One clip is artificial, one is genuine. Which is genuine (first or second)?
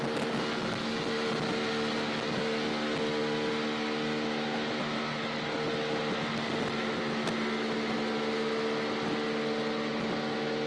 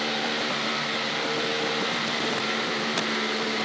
first